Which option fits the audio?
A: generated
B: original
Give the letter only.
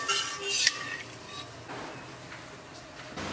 B